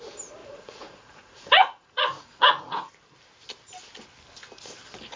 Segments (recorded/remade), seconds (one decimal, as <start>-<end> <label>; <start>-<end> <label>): 0.0-0.4 recorded; 0.4-2.9 remade; 2.9-5.2 recorded